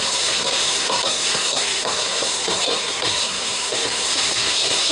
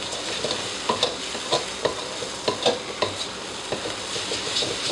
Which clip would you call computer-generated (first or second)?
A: first